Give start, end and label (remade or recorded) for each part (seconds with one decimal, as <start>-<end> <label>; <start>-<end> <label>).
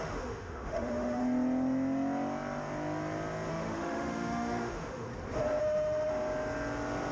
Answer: 0.0-1.2 remade; 1.2-3.5 recorded; 3.5-5.1 remade; 5.1-5.6 recorded; 5.6-6.1 remade; 6.1-7.1 recorded